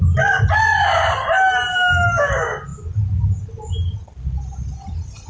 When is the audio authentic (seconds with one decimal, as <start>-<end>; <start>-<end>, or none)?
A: 0.0-1.7; 2.3-5.3